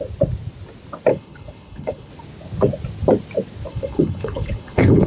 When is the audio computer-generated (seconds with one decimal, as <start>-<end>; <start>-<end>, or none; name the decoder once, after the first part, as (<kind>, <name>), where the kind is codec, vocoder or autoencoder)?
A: 1.1-2.1 (codec, HILCodec); 3.7-5.1

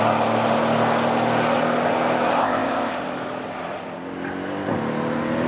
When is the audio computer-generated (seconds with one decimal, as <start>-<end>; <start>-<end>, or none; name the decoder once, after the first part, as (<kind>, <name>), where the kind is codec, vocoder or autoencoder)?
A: 2.4-2.9 (codec, ZipCodec)

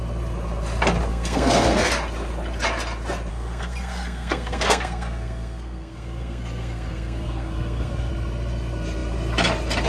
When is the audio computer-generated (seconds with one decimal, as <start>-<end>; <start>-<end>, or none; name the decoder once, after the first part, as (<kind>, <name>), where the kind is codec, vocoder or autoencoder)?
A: 1.1-1.9 (codec, SNAC); 3.3-8.1

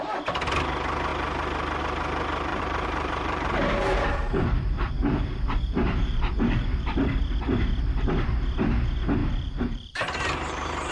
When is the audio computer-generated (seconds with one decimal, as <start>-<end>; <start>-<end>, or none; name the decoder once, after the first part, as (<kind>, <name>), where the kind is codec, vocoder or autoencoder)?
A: 2.5-7.2 (vocoder, BigVGAN v2); 9.2-10.9

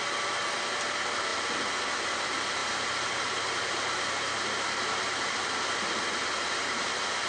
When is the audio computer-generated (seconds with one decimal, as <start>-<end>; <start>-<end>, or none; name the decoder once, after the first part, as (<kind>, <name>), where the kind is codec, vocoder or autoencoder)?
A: 2.6-5.3 (vocoder, BigVGAN v2)